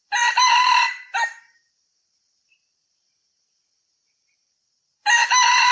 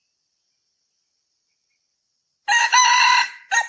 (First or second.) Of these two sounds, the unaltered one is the second